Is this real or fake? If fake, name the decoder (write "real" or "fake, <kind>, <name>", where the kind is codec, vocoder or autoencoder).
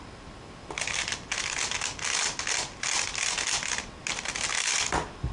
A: real